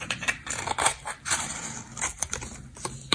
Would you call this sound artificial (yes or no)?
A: no